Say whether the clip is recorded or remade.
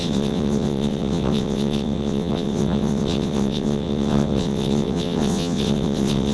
remade